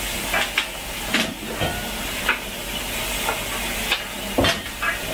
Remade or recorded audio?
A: recorded